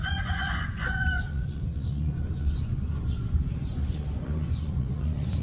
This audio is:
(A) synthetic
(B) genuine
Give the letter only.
A